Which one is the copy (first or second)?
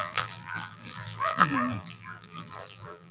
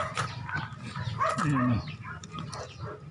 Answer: first